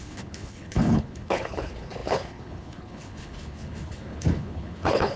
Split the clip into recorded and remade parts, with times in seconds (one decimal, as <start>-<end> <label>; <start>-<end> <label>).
0.0-5.2 remade